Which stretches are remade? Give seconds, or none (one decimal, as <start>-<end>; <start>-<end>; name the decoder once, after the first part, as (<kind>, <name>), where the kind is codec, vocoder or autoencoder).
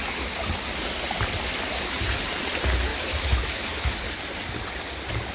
2.9-3.9 (autoencoder, DAC-VAE)